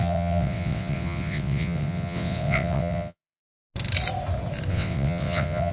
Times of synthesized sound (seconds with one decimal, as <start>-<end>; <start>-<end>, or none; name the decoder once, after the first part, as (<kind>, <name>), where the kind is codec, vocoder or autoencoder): 0.0-3.4 (vocoder, WaveNeXt); 4.7-5.7